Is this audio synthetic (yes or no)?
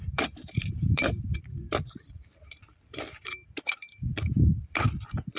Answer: yes